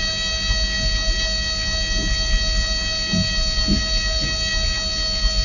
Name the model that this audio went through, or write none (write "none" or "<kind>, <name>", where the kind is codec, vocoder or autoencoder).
none